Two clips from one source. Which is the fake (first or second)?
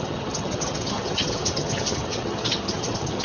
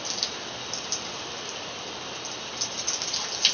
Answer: first